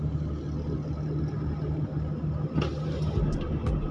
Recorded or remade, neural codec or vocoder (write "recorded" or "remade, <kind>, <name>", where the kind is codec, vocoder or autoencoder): recorded